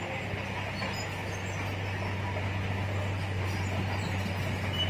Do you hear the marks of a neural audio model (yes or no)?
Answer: no